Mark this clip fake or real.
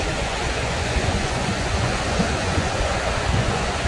fake